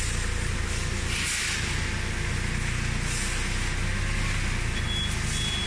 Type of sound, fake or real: real